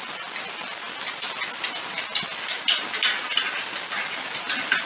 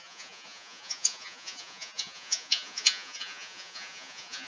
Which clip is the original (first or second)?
first